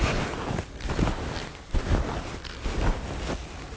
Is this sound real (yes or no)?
yes